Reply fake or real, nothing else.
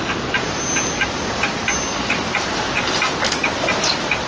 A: real